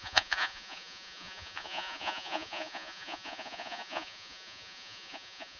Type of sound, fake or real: fake